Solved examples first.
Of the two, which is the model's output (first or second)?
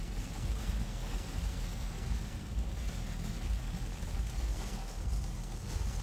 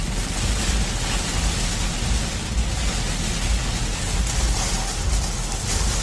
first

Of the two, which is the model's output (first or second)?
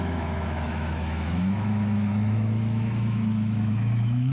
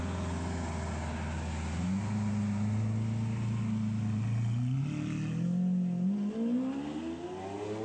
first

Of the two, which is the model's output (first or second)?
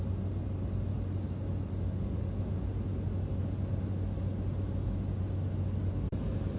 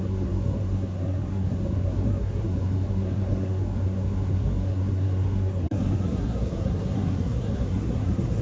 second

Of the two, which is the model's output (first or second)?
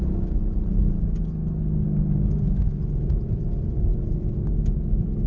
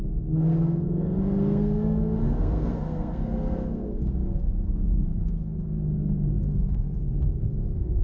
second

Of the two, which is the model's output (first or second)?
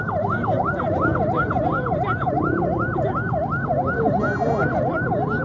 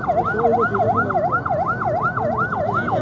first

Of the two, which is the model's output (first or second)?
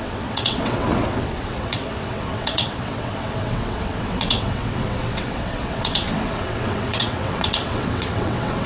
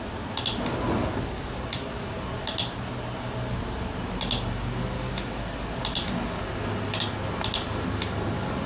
first